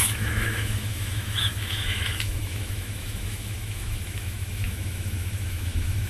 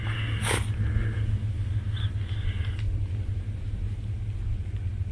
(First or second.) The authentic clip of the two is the second